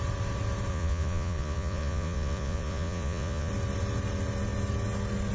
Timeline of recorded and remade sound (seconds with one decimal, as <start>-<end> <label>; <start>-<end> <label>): 0.0-0.7 recorded; 0.7-3.5 remade; 3.5-5.3 recorded